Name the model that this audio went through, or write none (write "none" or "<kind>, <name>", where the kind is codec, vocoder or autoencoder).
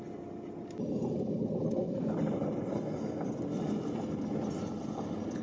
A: none